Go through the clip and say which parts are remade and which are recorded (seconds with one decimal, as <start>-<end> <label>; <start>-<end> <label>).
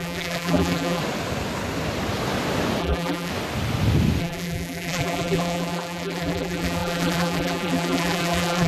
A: 0.0-1.0 remade; 1.0-2.8 recorded; 2.8-3.3 remade; 3.3-4.2 recorded; 4.2-8.7 remade